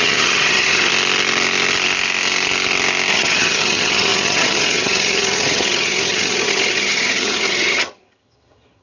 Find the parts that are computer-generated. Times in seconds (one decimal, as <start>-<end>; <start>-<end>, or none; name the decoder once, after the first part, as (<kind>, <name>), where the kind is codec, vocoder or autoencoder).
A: 0.0-0.9 (vocoder, HiFi-GAN); 3.1-8.8